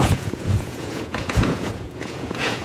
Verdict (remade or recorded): remade